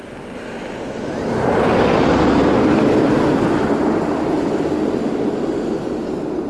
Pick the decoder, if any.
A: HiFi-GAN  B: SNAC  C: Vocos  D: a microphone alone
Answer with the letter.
D